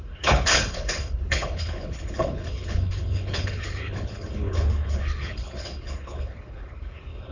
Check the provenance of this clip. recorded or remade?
remade